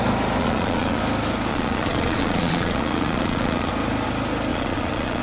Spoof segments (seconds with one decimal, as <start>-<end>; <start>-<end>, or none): 0.4-1.0; 1.5-3.7; 4.5-5.2